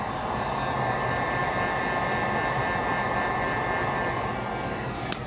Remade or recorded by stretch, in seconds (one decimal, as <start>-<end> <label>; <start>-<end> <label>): 0.0-5.3 recorded